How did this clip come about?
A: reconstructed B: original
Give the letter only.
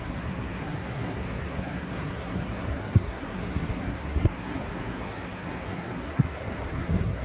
A